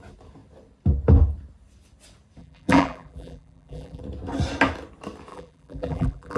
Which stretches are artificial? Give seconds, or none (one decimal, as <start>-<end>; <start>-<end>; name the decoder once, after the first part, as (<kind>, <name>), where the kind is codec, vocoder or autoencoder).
2.4-4.0 (vocoder, BigVGAN v2); 5.3-6.4